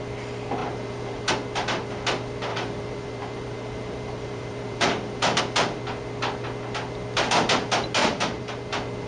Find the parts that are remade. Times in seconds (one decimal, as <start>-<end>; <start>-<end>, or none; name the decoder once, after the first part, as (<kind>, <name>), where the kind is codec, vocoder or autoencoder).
0.6-1.3 (vocoder, BigVGAN v2); 2.5-5.4; 8.0-8.7